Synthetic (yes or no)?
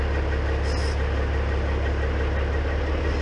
no